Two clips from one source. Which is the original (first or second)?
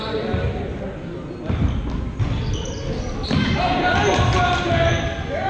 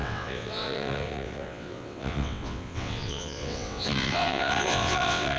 first